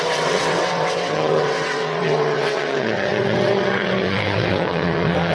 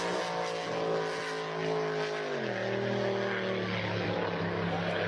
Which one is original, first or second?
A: second